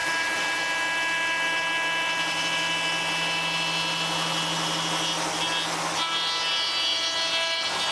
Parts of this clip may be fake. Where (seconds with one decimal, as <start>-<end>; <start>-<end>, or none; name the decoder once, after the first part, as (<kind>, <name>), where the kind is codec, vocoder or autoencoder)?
0.0-0.6 (vocoder, BigVGAN v2)